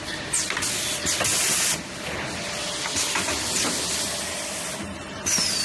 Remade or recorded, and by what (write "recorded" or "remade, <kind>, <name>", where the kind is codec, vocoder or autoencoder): recorded